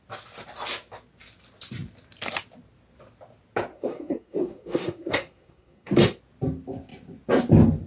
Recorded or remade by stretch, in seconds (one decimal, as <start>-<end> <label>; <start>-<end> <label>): 0.0-3.7 recorded; 3.7-5.9 remade; 5.9-7.9 recorded